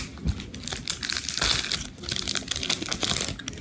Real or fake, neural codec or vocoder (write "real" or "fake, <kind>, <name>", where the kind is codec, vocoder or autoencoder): real